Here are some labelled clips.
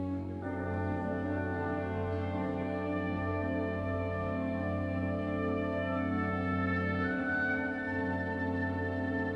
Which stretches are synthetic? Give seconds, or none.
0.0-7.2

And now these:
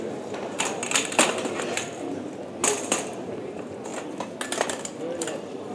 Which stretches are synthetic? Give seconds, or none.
none

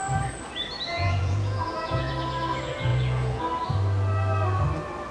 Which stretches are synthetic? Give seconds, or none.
0.9-2.1; 2.9-3.4

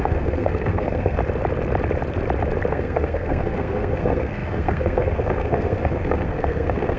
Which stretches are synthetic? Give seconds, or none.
0.0-1.2; 2.7-7.0

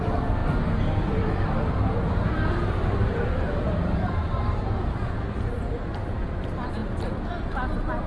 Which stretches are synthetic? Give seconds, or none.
0.4-4.6

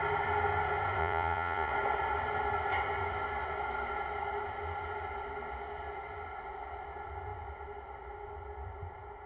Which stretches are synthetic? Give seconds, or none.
1.0-1.7